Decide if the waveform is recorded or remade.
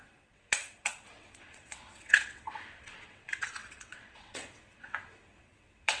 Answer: remade